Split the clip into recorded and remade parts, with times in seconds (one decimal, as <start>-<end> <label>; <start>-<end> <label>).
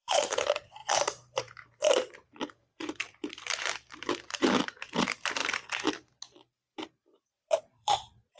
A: 0.0-5.4 remade; 5.4-6.9 recorded; 6.9-8.4 remade